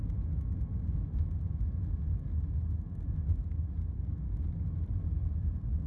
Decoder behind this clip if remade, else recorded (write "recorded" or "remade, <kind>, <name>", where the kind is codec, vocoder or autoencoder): recorded